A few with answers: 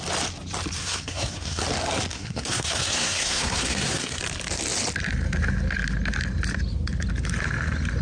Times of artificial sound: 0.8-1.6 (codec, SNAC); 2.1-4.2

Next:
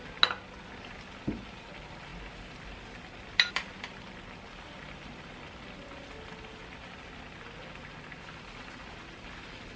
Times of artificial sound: none

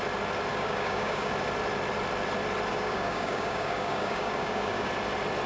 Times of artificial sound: 0.5-1.3 (codec, DAC); 2.7-4.9

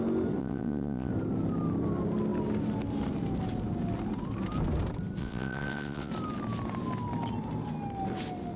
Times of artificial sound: 0.4-1.1 (vocoder, WaveNeXt); 5.2-6.1

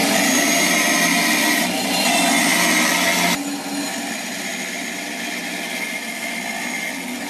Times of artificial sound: 0.0-0.5 (vocoder, BigVGAN v2); 4.5-5.5